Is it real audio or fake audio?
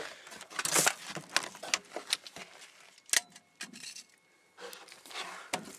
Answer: real